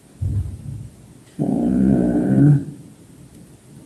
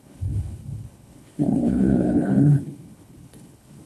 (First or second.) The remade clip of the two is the second